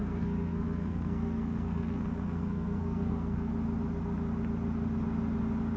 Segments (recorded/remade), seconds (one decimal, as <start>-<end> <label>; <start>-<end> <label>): 0.0-3.5 remade; 3.5-5.8 recorded